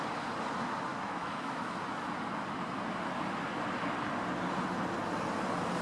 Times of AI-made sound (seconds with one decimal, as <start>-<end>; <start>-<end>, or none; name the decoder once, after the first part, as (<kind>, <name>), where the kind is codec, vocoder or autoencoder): 0.9-1.7 (autoencoder, DAC-VAE)